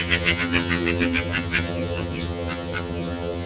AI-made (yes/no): yes